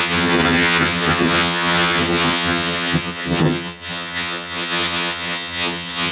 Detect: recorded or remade remade